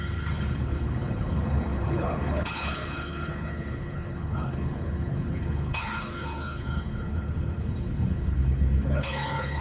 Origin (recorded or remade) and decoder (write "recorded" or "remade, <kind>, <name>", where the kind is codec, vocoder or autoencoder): remade, codec, HILCodec